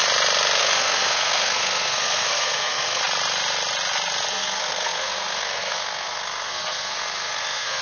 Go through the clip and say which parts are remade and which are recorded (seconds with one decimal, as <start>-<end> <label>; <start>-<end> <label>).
0.0-0.6 recorded; 0.6-3.0 remade; 3.0-4.3 recorded; 4.3-7.8 remade